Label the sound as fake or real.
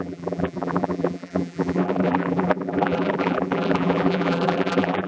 fake